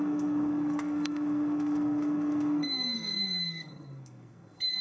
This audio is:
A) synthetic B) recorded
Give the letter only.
A